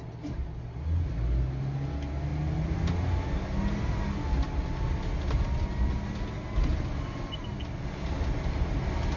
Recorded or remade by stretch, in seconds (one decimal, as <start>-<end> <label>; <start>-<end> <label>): 0.0-9.2 recorded